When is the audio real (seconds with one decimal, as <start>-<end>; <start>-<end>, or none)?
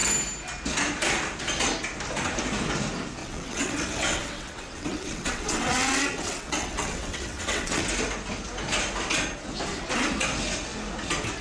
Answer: 0.0-3.2; 7.8-11.4